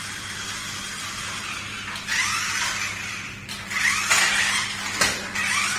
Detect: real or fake real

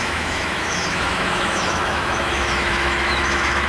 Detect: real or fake fake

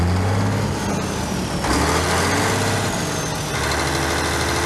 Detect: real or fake real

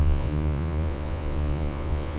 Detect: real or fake fake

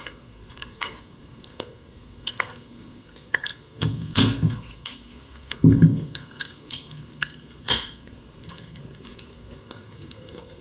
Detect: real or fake fake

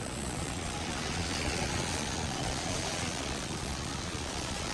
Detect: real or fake fake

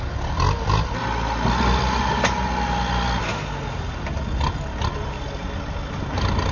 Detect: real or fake real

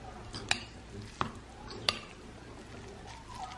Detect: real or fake real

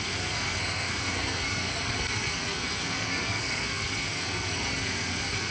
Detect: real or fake fake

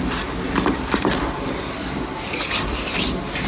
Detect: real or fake real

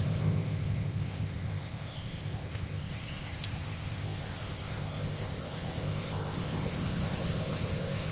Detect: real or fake fake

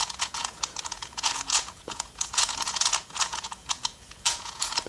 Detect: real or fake fake